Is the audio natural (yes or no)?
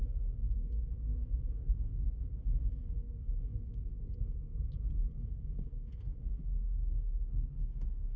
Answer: no